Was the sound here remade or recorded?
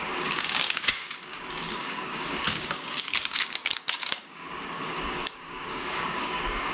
remade